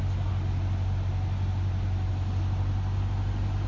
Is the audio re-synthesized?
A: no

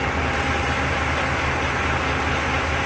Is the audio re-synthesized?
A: no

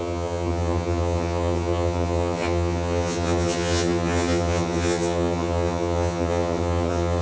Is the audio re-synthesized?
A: yes